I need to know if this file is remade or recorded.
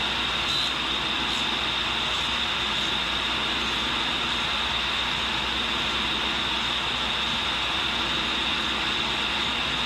recorded